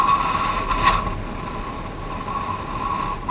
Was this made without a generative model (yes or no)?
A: yes